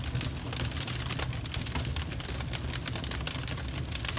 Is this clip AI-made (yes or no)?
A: no